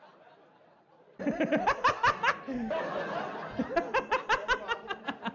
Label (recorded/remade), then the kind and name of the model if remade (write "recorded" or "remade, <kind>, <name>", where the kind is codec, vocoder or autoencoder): recorded